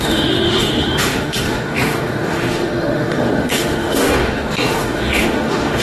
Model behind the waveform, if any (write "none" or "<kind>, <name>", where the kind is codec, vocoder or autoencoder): autoencoder, DAC-VAE